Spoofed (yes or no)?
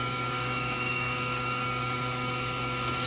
yes